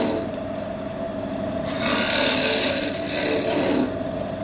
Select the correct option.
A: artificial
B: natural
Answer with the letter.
B